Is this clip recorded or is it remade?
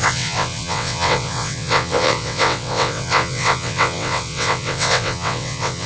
remade